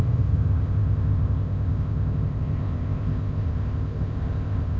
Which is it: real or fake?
fake